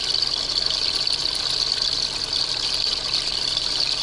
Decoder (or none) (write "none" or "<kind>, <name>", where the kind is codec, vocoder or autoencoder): none